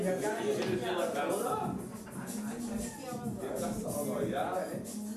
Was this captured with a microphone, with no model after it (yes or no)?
yes